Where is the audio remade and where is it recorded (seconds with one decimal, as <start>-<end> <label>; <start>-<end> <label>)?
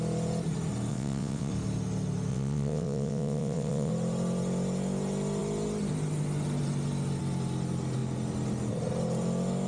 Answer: 0.0-0.9 recorded; 0.9-1.5 remade; 1.5-2.3 recorded; 2.3-3.9 remade; 3.9-9.7 recorded